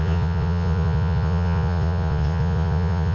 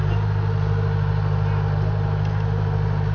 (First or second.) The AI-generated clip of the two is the first